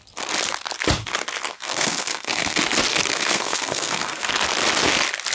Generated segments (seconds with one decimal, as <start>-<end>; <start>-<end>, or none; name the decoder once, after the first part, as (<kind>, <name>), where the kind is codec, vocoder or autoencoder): 1.5-2.6 (codec, SNAC); 3.1-4.3